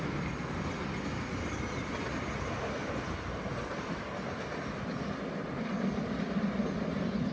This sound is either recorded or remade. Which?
recorded